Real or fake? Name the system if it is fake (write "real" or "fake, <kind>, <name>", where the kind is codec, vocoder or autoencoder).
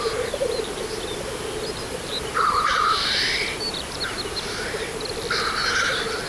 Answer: real